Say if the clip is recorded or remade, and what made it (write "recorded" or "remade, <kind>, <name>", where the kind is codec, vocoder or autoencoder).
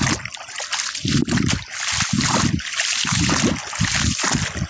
recorded